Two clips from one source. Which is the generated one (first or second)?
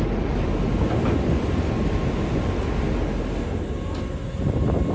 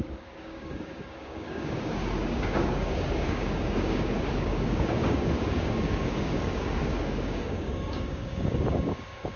second